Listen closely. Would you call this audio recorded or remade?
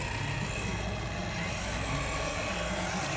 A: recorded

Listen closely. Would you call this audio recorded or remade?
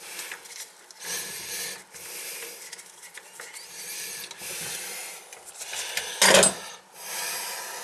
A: recorded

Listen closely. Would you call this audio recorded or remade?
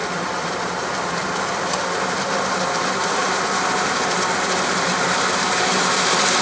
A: remade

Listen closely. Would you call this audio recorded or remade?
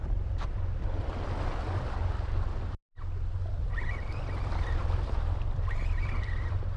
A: remade